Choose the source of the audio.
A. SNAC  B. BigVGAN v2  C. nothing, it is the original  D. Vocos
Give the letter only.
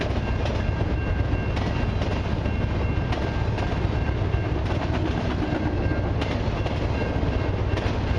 C